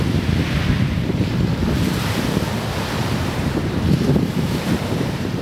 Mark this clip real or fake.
fake